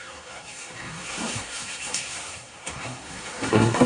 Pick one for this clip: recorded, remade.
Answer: remade